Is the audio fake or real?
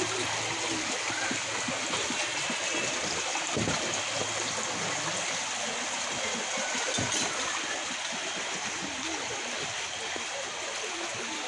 real